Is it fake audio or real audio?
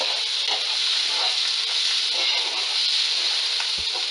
real